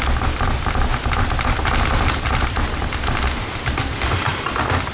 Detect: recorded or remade recorded